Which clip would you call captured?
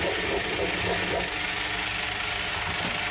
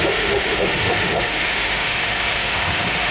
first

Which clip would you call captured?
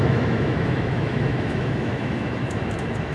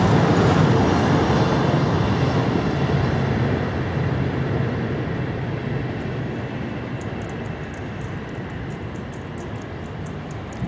second